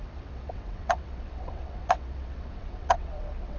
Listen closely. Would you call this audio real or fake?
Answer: fake